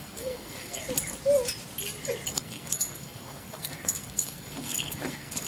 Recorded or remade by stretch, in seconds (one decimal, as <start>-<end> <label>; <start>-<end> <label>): 0.0-0.8 remade; 0.8-2.3 recorded; 2.3-5.5 remade